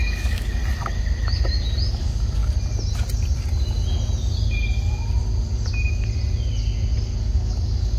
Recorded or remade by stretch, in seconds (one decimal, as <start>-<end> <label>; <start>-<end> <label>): 0.0-0.6 remade; 0.6-1.9 recorded; 1.9-2.4 remade; 2.4-7.2 recorded; 7.2-8.0 remade